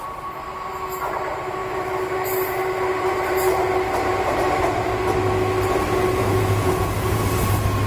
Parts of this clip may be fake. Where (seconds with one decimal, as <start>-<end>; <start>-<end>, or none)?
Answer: 6.2-7.2